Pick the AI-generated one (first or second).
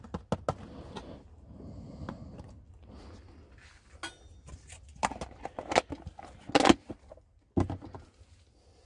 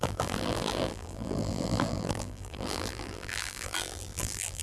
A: second